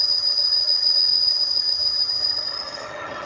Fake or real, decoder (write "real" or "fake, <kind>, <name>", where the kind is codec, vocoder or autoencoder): fake, vocoder, HiFi-GAN